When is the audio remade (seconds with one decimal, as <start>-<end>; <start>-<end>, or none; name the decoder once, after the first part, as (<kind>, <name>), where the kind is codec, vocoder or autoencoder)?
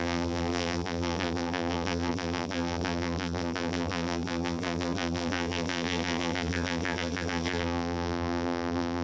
0.0-9.0 (vocoder, BigVGAN v2)